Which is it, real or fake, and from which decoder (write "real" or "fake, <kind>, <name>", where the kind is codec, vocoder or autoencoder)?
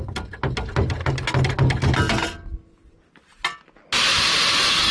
real